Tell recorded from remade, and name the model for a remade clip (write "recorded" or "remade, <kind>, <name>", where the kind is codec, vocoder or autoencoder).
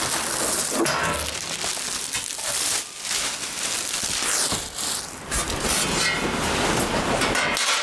recorded